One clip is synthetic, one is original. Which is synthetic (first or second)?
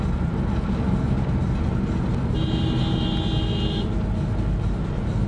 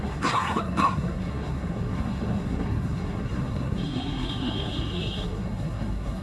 second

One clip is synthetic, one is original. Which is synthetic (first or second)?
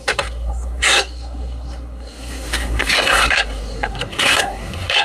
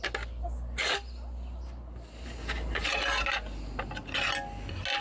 first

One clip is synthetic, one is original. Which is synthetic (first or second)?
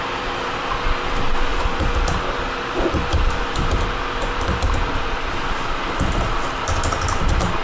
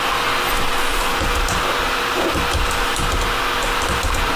first